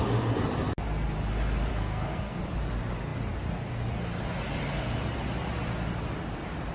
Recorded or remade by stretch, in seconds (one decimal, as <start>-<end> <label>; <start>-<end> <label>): 0.0-1.7 recorded; 1.7-2.4 remade; 2.4-6.7 recorded